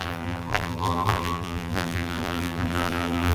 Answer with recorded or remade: remade